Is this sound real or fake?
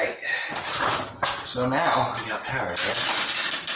real